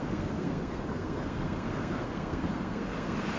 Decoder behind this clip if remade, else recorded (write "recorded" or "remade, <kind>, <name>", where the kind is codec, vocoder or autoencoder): remade, codec, SNAC